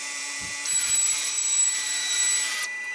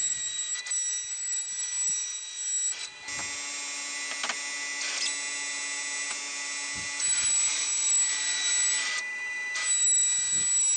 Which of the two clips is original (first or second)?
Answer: second